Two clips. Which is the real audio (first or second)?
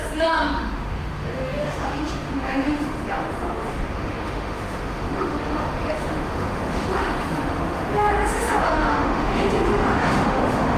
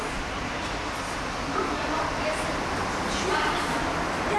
second